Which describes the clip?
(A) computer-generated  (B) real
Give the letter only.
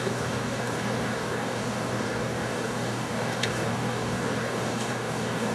A